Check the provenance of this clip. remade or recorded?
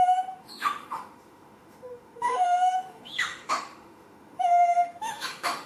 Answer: remade